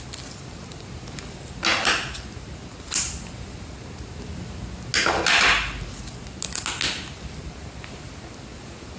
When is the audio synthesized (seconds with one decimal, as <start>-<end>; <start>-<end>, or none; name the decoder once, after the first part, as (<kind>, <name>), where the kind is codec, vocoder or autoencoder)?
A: none